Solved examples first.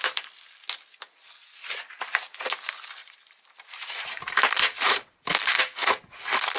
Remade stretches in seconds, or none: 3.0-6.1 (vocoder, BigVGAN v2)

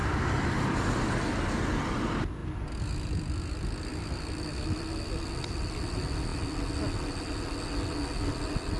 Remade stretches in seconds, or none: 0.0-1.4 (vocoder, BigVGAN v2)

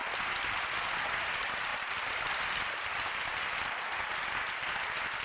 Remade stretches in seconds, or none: none

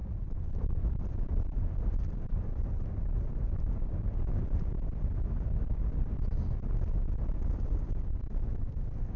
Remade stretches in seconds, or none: 0.0-3.7 (vocoder, BigVGAN v2)

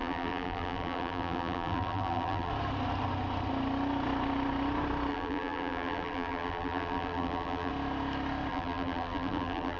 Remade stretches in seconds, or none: 0.0-2.5 (vocoder, BigVGAN v2); 5.1-7.7; 8.5-9.8

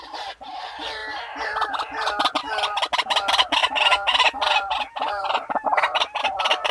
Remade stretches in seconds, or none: 3.6-6.2 (vocoder, BigVGAN v2)